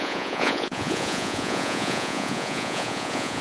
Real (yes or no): no